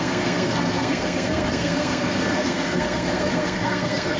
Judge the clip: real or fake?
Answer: fake